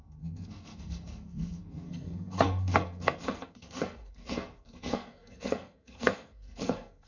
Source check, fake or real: fake